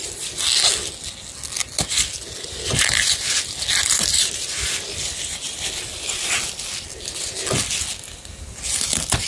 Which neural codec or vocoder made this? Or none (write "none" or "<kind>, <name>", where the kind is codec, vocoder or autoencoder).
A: none